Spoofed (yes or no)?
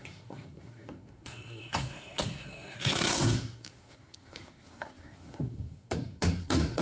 yes